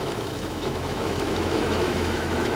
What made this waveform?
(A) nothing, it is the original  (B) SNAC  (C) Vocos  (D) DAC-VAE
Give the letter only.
D